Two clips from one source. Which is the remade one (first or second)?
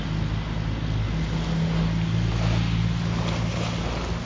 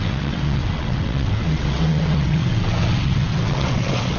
second